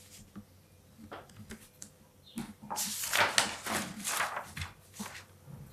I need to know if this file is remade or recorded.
recorded